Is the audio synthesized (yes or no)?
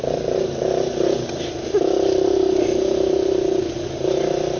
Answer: no